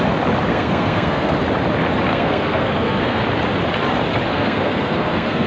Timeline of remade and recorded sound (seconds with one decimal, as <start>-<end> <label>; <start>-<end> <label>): 0.0-0.5 recorded; 0.5-1.3 remade; 1.3-2.1 recorded; 2.1-3.2 remade; 3.2-4.3 recorded; 4.3-5.5 remade